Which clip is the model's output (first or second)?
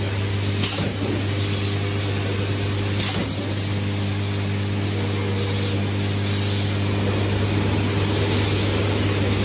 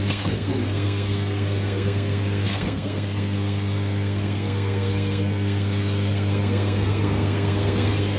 second